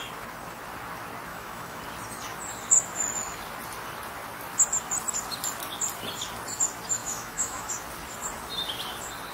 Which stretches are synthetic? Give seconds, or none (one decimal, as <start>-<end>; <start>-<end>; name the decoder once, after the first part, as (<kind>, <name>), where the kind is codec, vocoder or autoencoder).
1.3-1.8 (autoencoder, DAC-VAE); 7.0-7.7